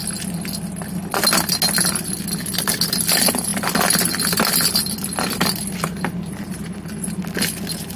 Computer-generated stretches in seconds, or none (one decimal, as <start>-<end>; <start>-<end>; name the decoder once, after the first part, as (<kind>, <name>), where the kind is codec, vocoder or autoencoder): none